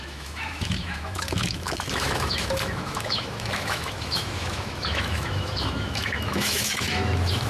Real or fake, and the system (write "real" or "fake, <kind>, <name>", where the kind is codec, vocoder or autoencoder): fake, autoencoder, DAC-VAE